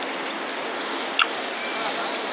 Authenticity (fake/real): real